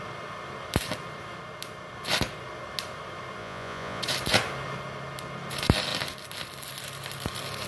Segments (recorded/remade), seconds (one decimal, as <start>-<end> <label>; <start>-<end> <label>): 0.0-3.4 recorded; 3.4-4.0 remade; 4.0-7.7 recorded